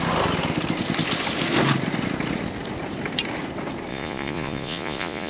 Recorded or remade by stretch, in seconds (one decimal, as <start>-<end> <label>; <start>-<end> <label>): 0.0-3.9 recorded; 3.9-5.3 remade